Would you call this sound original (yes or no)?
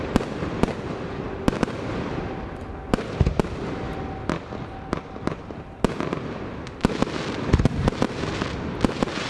yes